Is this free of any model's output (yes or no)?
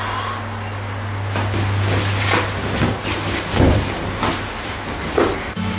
yes